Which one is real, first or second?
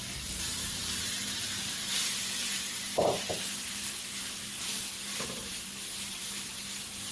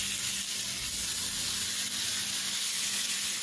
second